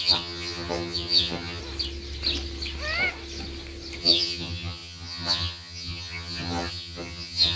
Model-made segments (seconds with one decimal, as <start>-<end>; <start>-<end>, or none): 0.0-1.6; 4.0-7.6